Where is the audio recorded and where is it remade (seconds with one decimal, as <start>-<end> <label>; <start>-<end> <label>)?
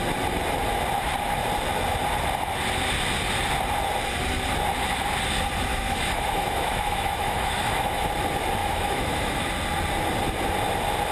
0.0-5.7 recorded; 5.7-8.1 remade; 8.1-8.6 recorded; 8.6-9.5 remade; 9.5-11.1 recorded